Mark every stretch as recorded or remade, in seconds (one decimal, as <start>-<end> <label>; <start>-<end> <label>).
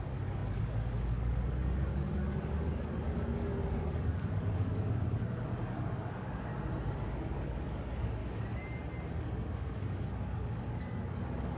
0.0-6.5 remade; 6.5-7.1 recorded; 7.1-8.2 remade; 8.2-9.1 recorded; 9.1-11.6 remade